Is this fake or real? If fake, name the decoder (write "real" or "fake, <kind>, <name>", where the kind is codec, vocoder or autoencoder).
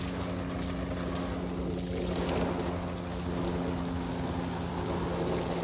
real